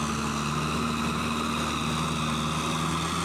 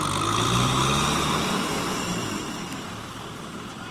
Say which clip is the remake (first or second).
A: second